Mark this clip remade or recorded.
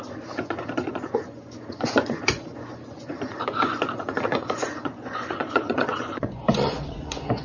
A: remade